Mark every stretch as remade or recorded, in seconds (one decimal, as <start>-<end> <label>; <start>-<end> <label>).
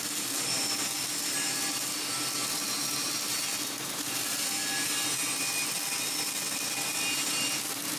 0.0-8.0 recorded